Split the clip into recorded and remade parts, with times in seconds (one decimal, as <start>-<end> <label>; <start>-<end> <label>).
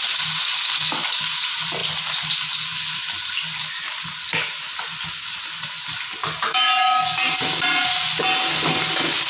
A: 0.0-6.2 recorded; 6.2-7.3 remade; 7.3-9.3 recorded